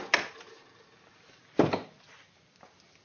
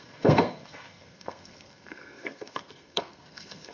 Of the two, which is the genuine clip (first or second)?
first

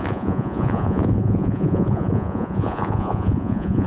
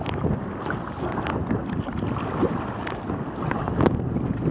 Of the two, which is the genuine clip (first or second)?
second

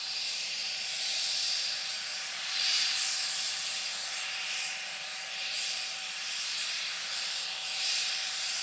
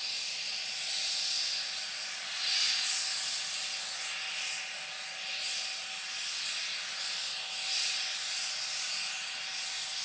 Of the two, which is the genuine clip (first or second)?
second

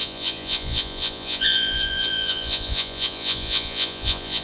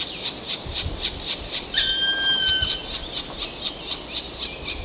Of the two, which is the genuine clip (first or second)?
second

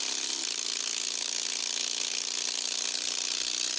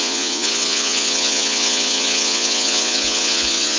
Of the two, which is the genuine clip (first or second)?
first